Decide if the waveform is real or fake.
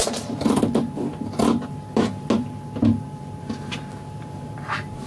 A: real